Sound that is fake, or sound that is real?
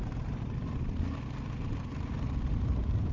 real